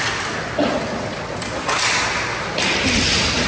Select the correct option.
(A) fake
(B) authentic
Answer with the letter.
B